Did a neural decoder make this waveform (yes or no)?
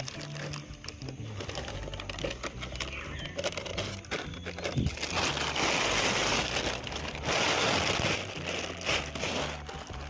no